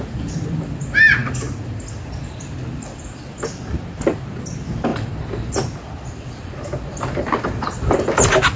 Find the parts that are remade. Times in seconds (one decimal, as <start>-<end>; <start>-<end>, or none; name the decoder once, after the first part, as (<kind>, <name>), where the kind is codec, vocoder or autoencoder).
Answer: none